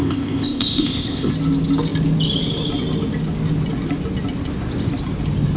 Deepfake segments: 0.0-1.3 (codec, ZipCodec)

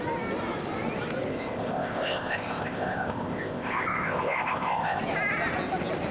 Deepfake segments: 1.3-5.0 (codec, ZipCodec)

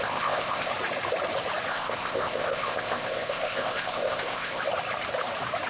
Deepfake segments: 0.0-0.7 (codec, ZipCodec); 1.7-4.6

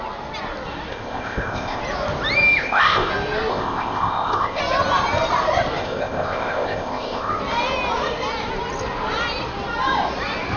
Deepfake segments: 0.9-1.8 (codec, ZipCodec); 2.6-3.1; 3.5-4.6; 5.8-7.4